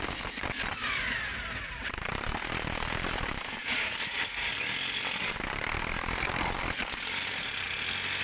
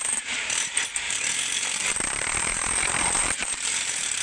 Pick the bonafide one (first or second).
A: first